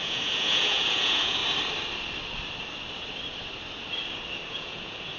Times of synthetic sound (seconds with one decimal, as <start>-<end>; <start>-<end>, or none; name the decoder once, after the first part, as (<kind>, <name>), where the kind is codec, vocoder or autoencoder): 0.0-1.4 (vocoder, Vocos); 4.5-5.2